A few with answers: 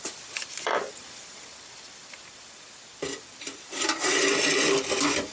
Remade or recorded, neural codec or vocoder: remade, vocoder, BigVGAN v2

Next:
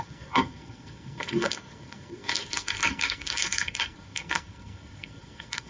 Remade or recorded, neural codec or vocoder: remade, codec, SNAC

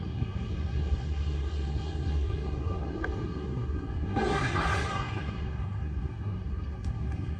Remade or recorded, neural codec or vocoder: remade, codec, SNAC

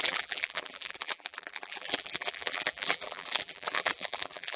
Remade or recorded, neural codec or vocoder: remade, vocoder, BigVGAN v2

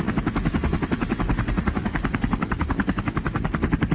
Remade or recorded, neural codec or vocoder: recorded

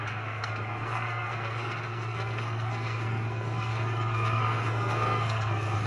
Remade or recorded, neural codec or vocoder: remade, codec, SNAC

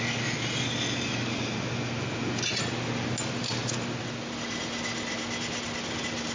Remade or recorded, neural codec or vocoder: recorded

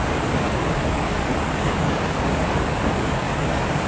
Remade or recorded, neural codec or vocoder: remade, codec, DAC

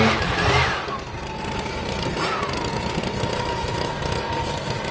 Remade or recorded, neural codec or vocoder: recorded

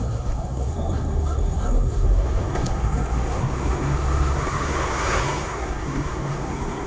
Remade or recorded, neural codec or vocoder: remade, codec, SNAC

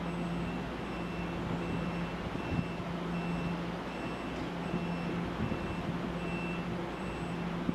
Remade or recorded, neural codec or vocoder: recorded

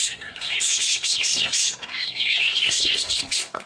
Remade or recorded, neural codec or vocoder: remade, codec, SNAC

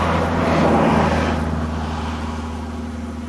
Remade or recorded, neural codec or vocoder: recorded